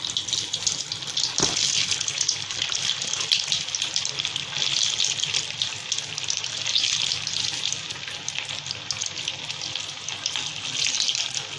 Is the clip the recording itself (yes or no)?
yes